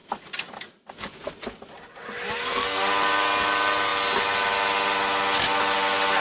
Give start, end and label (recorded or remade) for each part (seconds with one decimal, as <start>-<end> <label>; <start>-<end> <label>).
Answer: 0.0-2.4 recorded; 2.4-2.9 remade; 2.9-6.2 recorded